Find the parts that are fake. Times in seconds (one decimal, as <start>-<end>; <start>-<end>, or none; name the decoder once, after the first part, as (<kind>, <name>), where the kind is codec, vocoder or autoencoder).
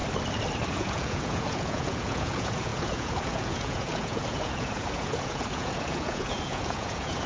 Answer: 0.7-7.3 (vocoder, Vocos)